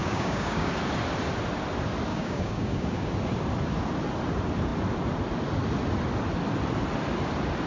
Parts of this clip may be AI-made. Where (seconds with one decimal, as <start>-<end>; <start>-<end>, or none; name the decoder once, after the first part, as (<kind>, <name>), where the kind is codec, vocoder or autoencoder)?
0.0-0.7 (codec, DAC); 2.1-3.1